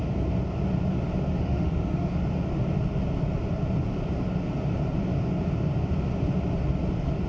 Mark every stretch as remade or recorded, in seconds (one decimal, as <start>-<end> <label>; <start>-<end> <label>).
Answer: 0.0-1.4 recorded; 1.4-2.1 remade; 2.1-7.3 recorded